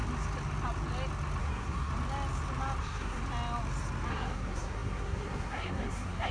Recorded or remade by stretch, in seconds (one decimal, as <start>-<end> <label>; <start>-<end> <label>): 0.0-1.4 recorded; 1.4-1.9 remade; 1.9-2.8 recorded; 2.8-3.2 remade; 3.2-4.1 recorded; 4.1-6.3 remade